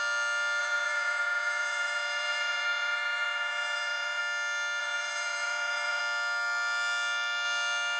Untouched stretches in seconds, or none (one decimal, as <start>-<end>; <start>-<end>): 0.0-0.6; 4.2-4.8; 6.0-8.0